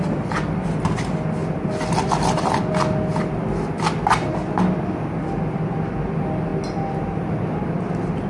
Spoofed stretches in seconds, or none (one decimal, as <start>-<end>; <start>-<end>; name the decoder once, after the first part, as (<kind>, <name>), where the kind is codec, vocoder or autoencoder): none